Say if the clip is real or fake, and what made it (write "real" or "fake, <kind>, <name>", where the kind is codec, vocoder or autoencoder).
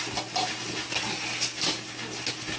real